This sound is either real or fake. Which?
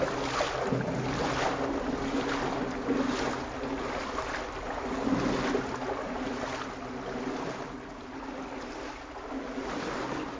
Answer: real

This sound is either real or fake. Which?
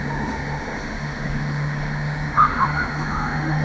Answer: fake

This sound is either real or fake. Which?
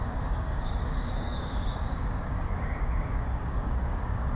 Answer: fake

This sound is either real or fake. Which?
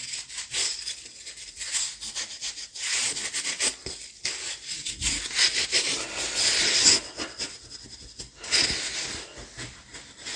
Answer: real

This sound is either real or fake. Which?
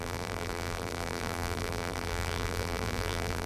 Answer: fake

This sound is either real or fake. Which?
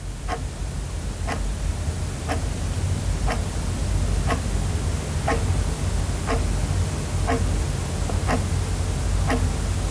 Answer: real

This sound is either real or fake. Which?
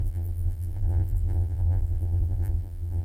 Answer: fake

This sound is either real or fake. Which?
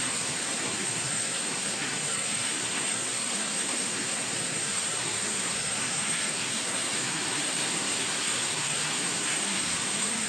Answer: fake